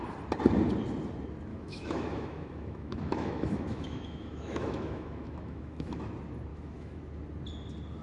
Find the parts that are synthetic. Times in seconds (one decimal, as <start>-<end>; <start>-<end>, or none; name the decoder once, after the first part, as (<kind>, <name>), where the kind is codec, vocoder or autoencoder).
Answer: 1.5-6.1 (autoencoder, DAC-VAE); 6.5-7.0